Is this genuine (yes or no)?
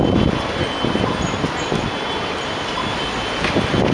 yes